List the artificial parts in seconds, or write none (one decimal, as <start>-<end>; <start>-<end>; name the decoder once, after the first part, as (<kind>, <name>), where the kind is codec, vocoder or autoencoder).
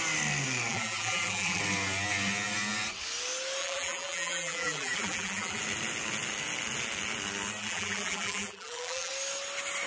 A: 0.7-1.6 (vocoder, BigVGAN v2); 3.6-5.6; 7.6-9.1